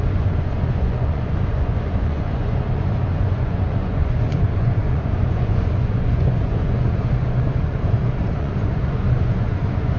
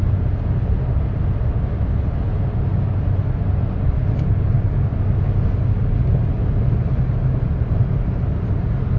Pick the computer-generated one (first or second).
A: first